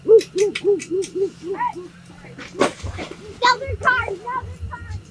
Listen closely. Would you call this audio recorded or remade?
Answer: recorded